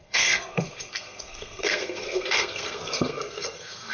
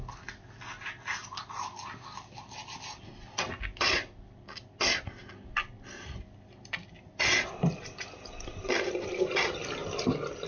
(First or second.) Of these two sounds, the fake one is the first